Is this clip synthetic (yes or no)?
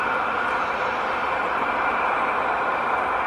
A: yes